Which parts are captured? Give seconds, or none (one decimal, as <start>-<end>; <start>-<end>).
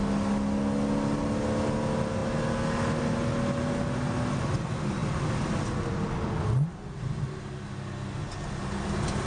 0.0-9.3